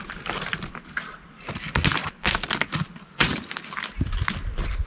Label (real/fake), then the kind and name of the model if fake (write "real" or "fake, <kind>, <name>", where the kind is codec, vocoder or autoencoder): real